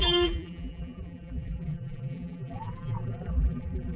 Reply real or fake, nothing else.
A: fake